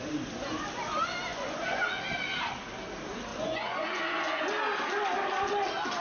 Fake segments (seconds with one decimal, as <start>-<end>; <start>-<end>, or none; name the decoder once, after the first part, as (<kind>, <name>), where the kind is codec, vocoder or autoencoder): 1.3-2.0 (vocoder, Vocos); 3.3-4.4